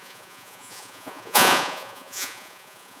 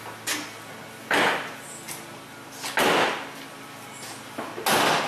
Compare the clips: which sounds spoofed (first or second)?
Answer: first